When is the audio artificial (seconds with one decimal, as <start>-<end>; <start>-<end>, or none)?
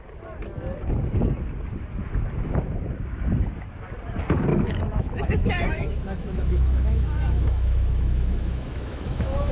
4.5-9.5